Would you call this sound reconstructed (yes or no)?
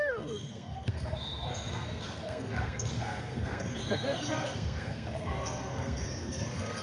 yes